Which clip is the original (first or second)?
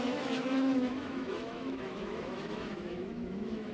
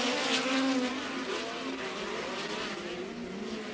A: second